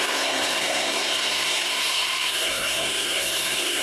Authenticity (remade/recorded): remade